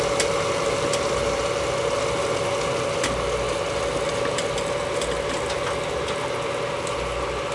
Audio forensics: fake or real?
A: real